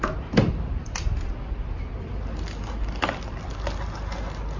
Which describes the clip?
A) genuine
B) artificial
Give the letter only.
A